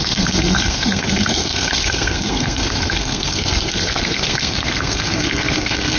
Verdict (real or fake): fake